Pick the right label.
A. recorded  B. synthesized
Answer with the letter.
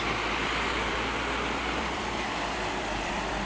B